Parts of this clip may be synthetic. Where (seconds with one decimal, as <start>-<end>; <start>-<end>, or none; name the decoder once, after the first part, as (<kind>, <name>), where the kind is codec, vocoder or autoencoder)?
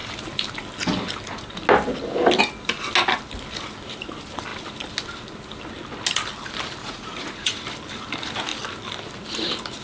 6.8-7.6 (vocoder, Vocos)